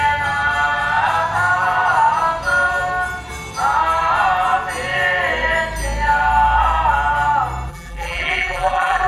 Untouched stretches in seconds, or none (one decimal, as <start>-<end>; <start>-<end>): 0.0-7.7